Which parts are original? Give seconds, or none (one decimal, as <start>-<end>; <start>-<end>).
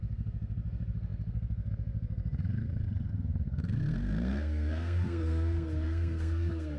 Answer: none